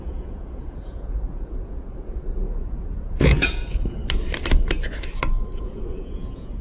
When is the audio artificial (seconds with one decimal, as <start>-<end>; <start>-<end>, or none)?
0.0-4.0; 5.6-6.6